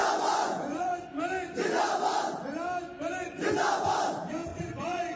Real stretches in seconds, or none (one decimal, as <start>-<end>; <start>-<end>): 0.9-4.5